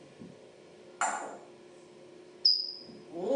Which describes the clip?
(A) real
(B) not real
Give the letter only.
A